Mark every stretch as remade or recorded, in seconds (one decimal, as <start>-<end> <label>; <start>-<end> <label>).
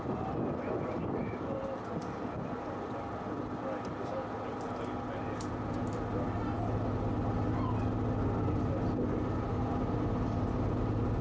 0.0-11.2 recorded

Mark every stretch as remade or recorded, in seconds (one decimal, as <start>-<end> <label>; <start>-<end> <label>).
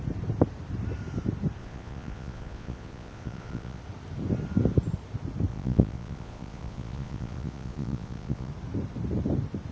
0.0-1.6 recorded; 1.6-3.8 remade; 3.8-5.5 recorded; 5.5-8.5 remade; 8.5-9.7 recorded